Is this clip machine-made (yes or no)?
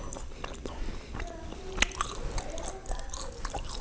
no